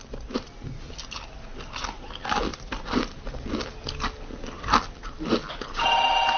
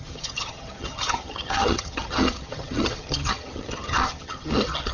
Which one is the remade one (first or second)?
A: second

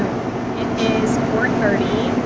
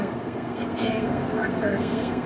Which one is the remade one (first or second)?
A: second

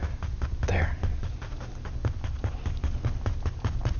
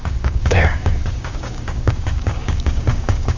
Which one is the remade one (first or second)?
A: second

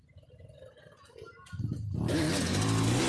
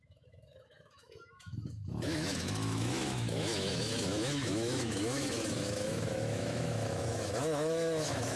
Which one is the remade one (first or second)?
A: second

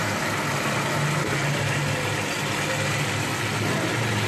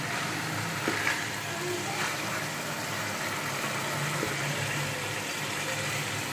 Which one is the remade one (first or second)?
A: second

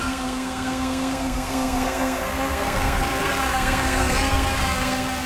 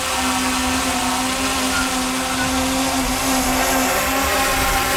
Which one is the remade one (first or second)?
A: first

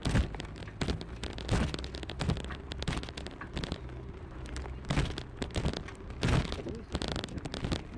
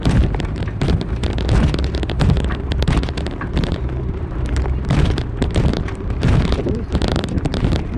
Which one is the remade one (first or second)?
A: second